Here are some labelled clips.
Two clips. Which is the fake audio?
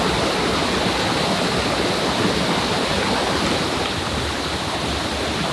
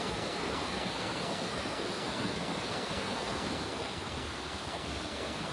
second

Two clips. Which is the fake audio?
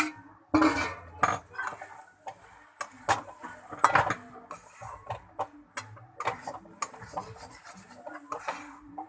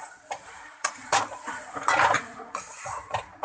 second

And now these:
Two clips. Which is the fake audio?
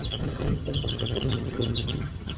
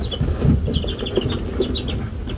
first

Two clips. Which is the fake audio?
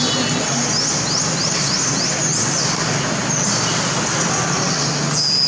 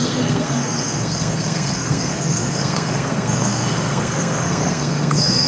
second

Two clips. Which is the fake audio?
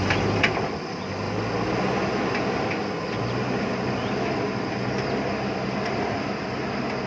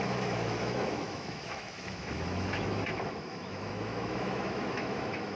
second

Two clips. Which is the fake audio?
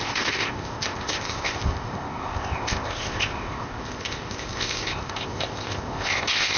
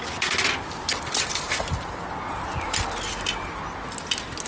first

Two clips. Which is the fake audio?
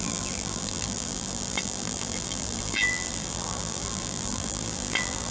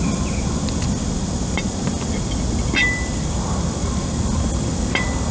first